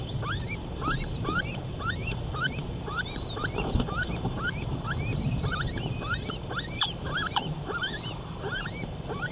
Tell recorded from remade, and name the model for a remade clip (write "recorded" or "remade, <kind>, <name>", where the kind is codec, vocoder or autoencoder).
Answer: remade, vocoder, BigVGAN v2